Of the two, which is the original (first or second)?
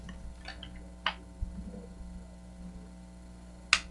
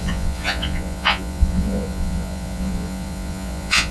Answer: first